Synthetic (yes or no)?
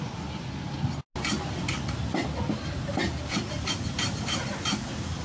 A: no